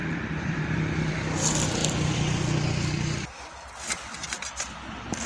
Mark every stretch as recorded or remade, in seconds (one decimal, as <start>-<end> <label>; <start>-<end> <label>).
0.0-1.1 remade; 1.1-5.3 recorded